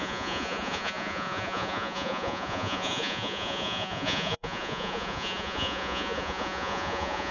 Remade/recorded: remade